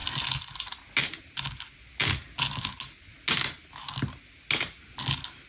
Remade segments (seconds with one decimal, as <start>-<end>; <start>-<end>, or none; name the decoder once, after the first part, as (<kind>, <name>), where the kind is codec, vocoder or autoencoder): none